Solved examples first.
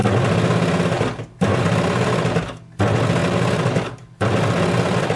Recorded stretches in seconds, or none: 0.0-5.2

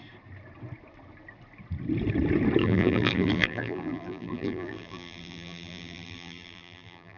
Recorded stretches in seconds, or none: 0.0-2.6

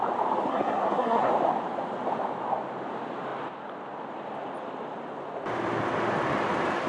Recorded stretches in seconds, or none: 0.0-0.5; 1.3-6.9

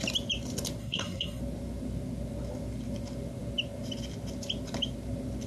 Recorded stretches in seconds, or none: 0.0-0.8; 1.4-5.5

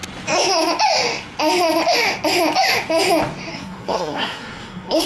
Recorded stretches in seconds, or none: 0.0-3.5